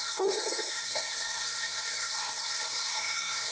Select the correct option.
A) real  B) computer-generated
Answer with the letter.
B